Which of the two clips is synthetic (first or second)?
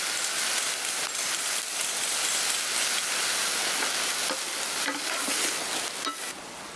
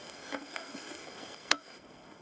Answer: second